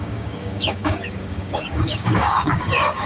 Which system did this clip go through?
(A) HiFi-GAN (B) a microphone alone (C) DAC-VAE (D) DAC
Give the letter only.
D